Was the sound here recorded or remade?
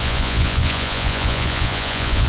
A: remade